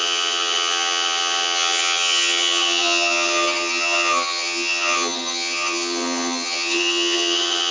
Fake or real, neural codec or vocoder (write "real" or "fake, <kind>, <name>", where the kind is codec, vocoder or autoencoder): fake, vocoder, HiFi-GAN